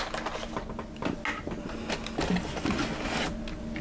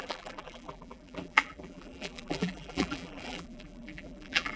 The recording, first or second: first